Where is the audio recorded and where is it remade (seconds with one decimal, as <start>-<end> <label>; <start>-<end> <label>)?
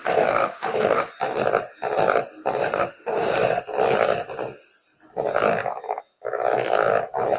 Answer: 0.0-1.1 remade; 1.1-2.6 recorded; 2.6-3.6 remade; 3.6-7.4 recorded